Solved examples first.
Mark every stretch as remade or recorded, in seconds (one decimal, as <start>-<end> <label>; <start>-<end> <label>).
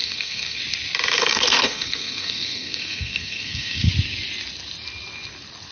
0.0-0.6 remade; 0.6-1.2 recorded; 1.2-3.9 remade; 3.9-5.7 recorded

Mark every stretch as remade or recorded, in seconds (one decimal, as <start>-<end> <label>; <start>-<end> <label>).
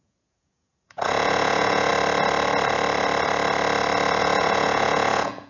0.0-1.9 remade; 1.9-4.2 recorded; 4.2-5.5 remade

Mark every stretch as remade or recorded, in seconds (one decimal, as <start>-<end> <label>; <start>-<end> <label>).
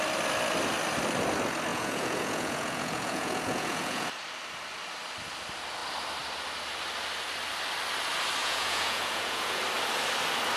0.0-1.7 recorded; 1.7-4.1 remade; 4.1-8.4 recorded; 8.4-9.6 remade; 9.6-10.6 recorded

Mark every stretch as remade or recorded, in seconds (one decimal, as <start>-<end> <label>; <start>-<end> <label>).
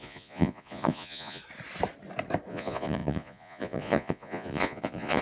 0.0-1.4 remade; 1.4-2.5 recorded; 2.5-5.2 remade